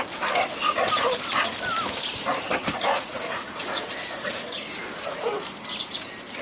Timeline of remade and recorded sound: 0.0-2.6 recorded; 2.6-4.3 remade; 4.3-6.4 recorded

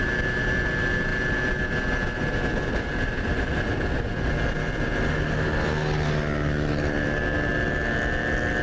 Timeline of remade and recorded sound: 0.0-8.6 recorded

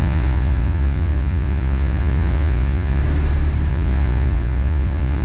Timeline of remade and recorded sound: 0.0-3.0 remade; 3.0-3.7 recorded; 3.7-5.2 remade